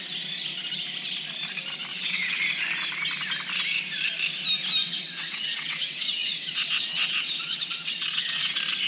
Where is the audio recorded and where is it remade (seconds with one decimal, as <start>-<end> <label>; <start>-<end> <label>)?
0.0-1.9 recorded; 1.9-2.4 remade; 2.4-4.8 recorded; 4.8-8.5 remade; 8.5-8.9 recorded